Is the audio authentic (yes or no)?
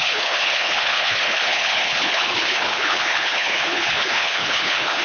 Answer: no